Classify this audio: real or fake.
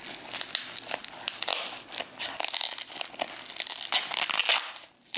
real